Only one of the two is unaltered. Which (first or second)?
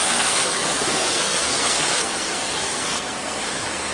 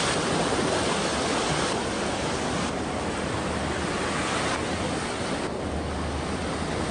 second